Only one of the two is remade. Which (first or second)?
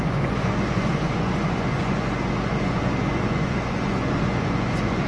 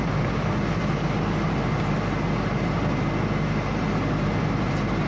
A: first